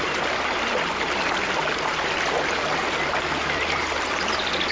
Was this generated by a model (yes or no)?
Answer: no